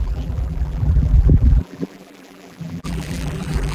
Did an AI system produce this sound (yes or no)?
yes